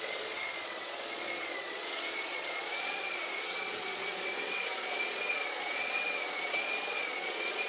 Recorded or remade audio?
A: remade